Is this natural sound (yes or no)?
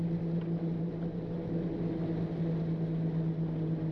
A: yes